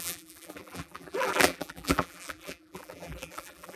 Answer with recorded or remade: remade